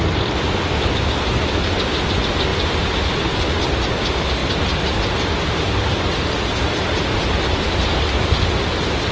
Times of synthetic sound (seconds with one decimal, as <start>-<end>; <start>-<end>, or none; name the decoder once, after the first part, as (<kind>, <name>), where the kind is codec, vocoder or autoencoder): none